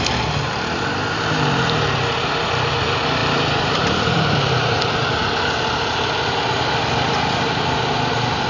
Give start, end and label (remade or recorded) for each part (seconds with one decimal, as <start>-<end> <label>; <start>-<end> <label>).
0.0-3.2 recorded; 3.2-4.8 remade; 4.8-8.5 recorded